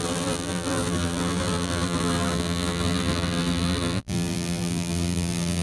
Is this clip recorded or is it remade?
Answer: remade